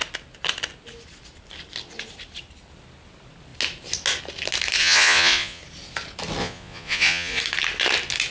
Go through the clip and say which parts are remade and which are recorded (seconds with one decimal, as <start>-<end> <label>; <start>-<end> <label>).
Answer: 0.0-4.8 recorded; 4.8-5.6 remade; 5.6-6.4 recorded; 6.4-7.4 remade; 7.4-8.3 recorded